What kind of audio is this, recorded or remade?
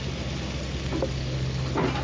recorded